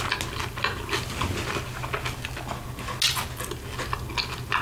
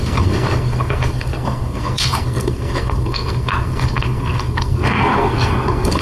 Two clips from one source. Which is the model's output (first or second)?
second